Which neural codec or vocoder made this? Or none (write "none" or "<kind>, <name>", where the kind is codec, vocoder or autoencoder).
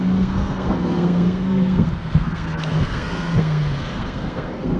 codec, SNAC